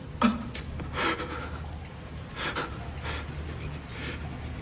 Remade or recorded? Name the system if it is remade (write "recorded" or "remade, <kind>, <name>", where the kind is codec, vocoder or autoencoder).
recorded